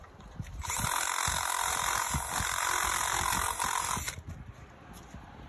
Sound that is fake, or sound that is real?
real